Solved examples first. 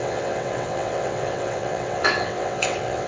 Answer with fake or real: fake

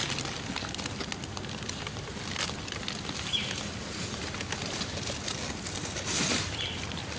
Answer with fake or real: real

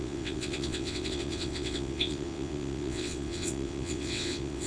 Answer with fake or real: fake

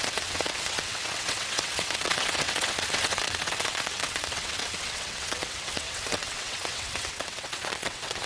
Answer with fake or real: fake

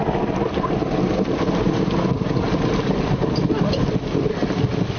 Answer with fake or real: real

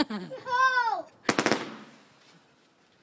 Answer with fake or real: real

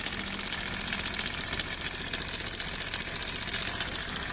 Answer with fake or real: real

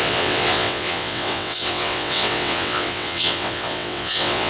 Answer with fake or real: fake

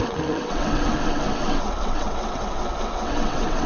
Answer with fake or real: fake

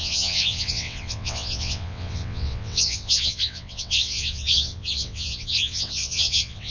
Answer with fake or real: fake